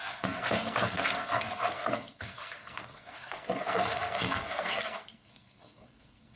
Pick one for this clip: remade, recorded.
remade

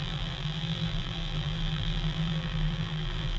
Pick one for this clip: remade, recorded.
remade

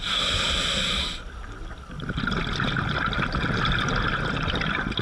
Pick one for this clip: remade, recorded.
recorded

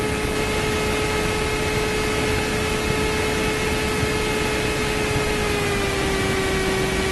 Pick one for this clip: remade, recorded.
recorded